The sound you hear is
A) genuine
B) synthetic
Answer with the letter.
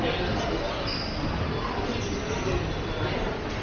A